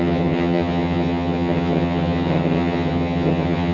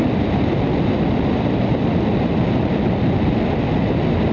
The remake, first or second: first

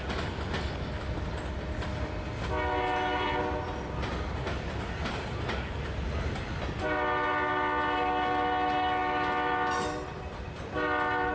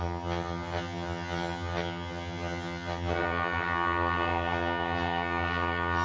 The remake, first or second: second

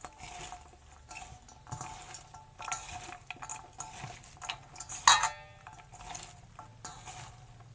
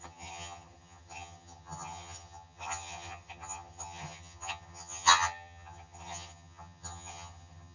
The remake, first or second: second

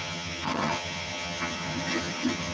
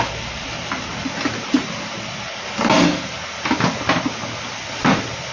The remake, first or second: first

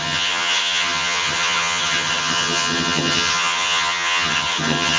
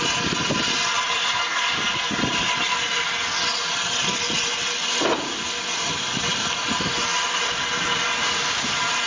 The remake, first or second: first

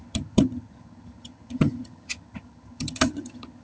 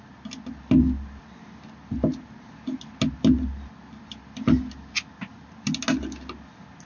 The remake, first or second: first